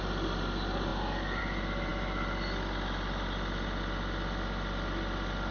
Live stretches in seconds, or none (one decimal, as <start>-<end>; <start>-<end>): 0.0-5.5